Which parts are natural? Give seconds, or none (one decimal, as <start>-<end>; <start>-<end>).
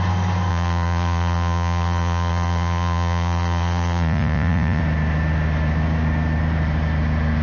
0.0-0.5; 4.8-7.4